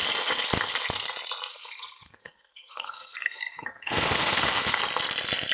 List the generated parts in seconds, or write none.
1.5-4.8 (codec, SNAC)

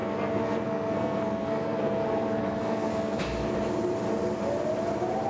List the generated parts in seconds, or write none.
0.0-3.2 (codec, SNAC)

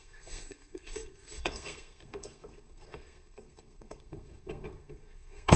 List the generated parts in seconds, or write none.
0.0-5.6 (codec, SNAC)

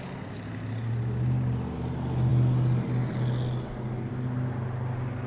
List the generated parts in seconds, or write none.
none

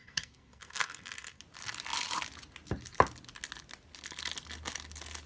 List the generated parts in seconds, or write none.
0.0-1.4 (codec, SNAC)

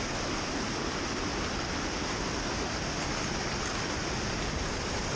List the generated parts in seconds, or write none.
none

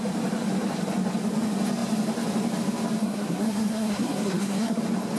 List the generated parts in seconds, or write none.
3.0-4.8 (codec, SNAC)